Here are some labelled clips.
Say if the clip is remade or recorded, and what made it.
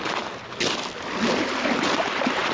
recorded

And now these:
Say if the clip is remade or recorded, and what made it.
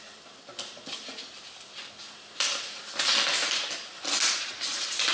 recorded